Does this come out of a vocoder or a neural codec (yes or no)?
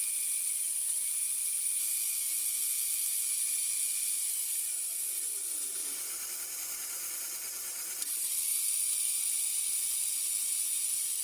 no